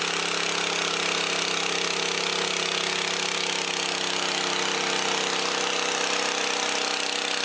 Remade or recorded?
recorded